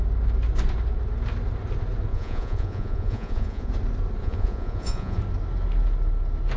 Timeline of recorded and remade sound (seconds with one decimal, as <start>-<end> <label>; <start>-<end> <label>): 0.0-2.1 recorded; 2.1-3.7 remade; 3.7-4.2 recorded; 4.2-5.2 remade; 5.2-6.6 recorded